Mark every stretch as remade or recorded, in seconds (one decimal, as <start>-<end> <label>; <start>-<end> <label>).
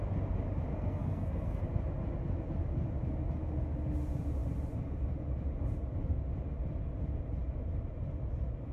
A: 0.0-0.7 recorded; 0.7-1.6 remade; 1.6-8.7 recorded